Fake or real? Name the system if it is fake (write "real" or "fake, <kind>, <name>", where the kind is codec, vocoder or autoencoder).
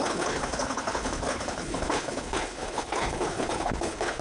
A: fake, codec, HILCodec